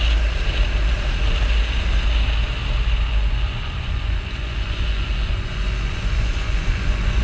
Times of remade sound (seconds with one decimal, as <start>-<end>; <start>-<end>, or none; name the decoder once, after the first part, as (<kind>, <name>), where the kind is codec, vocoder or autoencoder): 3.1-7.2 (vocoder, Vocos)